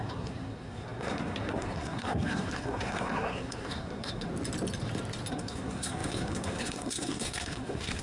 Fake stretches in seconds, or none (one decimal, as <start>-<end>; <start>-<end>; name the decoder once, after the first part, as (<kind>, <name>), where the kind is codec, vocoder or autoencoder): 0.0-4.3 (codec, SNAC); 5.3-8.0